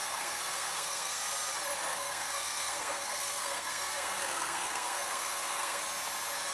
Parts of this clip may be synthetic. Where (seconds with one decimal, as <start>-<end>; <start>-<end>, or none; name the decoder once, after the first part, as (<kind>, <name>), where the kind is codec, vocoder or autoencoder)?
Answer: 0.0-1.2 (codec, SNAC); 1.9-5.8